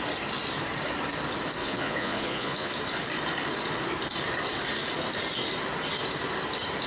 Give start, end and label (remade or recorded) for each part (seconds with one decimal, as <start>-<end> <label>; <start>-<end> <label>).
0.0-1.6 recorded; 1.6-2.7 remade; 2.7-6.9 recorded